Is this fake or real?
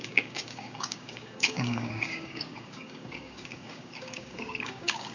fake